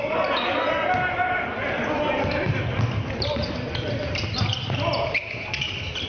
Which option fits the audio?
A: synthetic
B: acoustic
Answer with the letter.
B